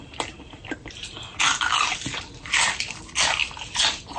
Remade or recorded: recorded